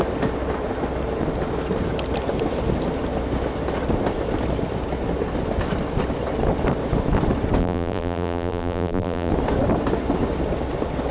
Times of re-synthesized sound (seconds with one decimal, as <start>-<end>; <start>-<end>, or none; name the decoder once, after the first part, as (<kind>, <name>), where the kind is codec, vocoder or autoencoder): 7.6-9.3 (vocoder, BigVGAN v2)